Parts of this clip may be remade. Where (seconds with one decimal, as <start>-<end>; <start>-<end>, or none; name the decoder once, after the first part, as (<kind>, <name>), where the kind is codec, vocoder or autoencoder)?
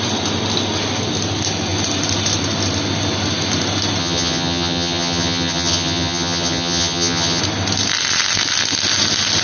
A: 4.0-7.4 (vocoder, HiFi-GAN)